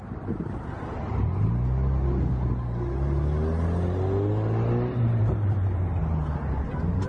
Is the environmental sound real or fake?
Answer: real